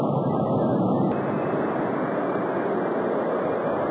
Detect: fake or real real